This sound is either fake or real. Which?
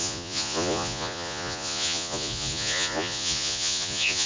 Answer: fake